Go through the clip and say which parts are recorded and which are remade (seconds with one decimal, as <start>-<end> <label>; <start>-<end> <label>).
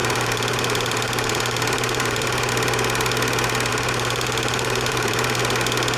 0.0-2.5 remade; 2.5-3.7 recorded; 3.7-5.4 remade; 5.4-6.0 recorded